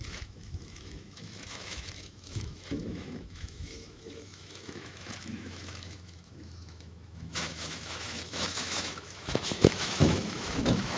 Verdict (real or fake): fake